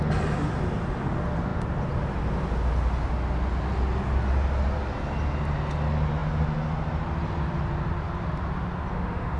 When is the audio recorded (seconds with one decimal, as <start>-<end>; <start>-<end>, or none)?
0.0-8.9